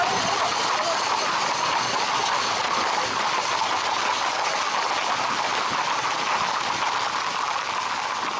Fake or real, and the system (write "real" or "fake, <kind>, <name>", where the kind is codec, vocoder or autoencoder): real